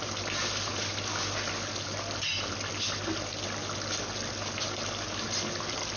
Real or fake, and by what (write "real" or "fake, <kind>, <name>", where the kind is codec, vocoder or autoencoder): real